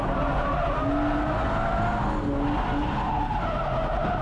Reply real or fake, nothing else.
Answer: real